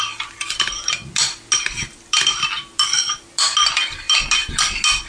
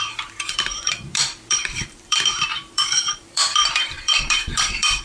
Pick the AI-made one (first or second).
second